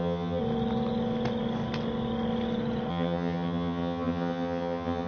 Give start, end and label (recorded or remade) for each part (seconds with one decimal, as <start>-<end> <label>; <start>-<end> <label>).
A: 0.0-0.4 remade; 0.4-2.9 recorded; 2.9-5.1 remade